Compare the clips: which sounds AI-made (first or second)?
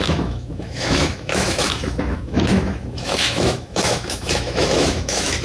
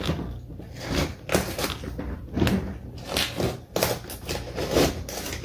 first